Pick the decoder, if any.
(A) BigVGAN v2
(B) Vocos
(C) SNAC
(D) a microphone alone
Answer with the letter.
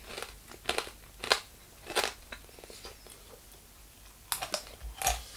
D